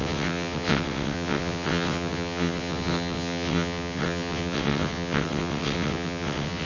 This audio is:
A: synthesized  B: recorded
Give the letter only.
A